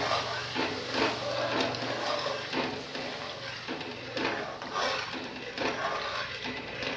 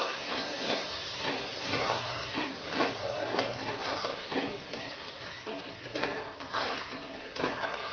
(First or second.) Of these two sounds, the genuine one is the first